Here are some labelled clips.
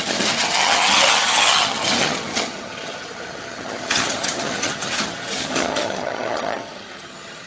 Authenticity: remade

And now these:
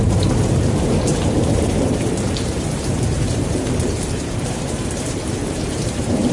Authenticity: remade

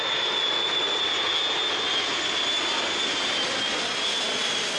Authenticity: recorded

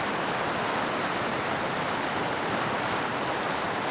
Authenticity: recorded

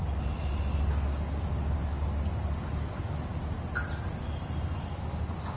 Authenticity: recorded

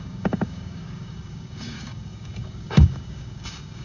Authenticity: remade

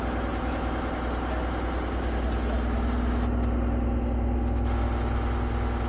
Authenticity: recorded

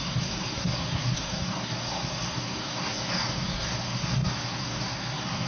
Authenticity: remade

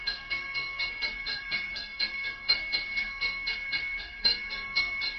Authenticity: remade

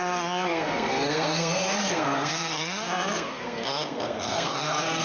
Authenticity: remade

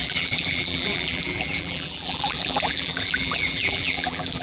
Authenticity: remade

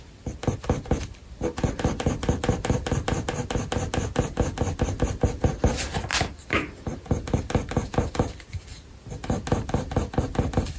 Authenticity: recorded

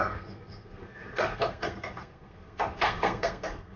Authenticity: remade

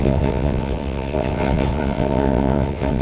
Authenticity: remade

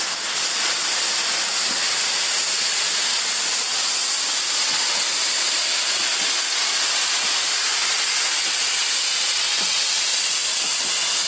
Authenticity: recorded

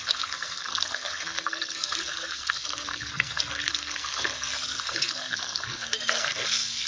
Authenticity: remade